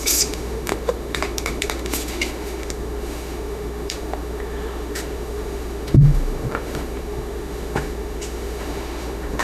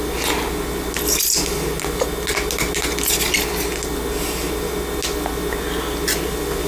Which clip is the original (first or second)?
second